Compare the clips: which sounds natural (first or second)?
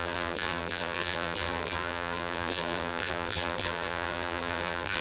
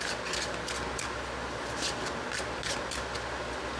second